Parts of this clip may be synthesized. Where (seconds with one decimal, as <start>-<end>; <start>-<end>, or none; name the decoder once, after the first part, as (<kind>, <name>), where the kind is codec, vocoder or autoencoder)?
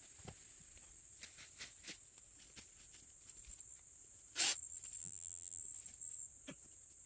5.0-5.6 (vocoder, BigVGAN v2)